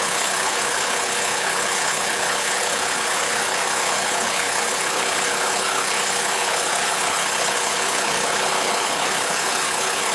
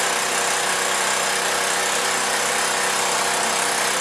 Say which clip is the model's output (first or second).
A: first